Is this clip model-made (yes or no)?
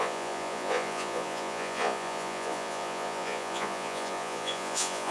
yes